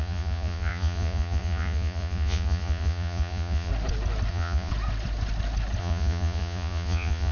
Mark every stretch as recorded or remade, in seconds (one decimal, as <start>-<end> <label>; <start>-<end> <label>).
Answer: 0.0-3.7 remade; 3.7-4.3 recorded; 4.3-4.7 remade; 4.7-5.8 recorded; 5.8-7.3 remade